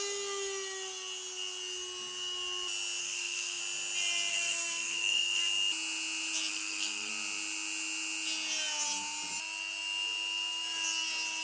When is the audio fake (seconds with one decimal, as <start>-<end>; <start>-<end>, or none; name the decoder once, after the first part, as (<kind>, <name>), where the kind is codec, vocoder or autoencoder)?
3.0-3.6 (codec, SNAC); 4.3-5.4; 6.5-7.1